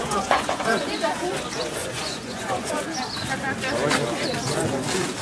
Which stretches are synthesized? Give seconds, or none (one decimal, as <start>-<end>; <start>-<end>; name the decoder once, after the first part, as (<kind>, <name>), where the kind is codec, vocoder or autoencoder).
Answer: 0.0-1.1 (vocoder, Vocos); 1.8-2.8